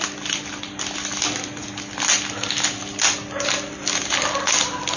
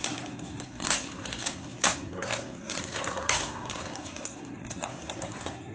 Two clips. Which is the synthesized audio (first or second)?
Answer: second